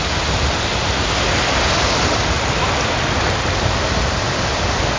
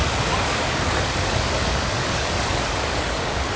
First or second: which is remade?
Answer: second